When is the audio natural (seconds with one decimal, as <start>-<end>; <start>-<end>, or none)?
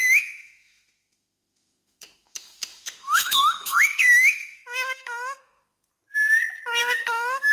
5.9-6.8